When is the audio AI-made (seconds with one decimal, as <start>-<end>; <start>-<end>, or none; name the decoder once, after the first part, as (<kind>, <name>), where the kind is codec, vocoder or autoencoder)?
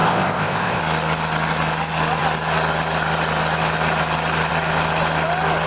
0.0-0.8 (codec, ZipCodec)